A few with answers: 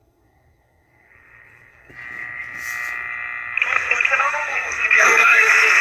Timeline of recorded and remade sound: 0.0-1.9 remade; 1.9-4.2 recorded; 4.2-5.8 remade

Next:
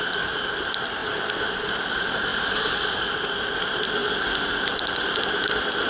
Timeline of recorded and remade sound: 0.0-2.3 recorded; 2.3-3.0 remade; 3.0-4.0 recorded; 4.0-5.2 remade; 5.2-5.9 recorded

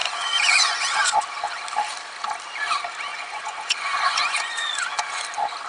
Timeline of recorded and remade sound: 0.0-1.2 remade; 1.2-3.1 recorded; 3.1-5.2 remade; 5.2-5.7 recorded

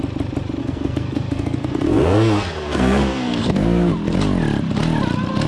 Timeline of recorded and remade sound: 0.0-0.6 recorded; 0.6-3.9 remade; 3.9-5.5 recorded